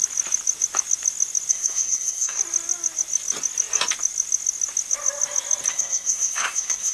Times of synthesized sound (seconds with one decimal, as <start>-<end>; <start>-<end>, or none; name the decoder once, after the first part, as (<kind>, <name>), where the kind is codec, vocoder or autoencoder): 1.5-2.4 (codec, SNAC); 5.7-6.9